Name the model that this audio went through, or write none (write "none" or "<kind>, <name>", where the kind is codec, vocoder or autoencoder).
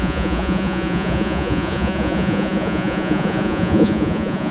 vocoder, Vocos